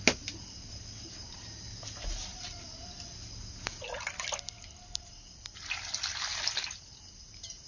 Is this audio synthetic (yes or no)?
no